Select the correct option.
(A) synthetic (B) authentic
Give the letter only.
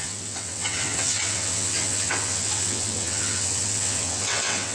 A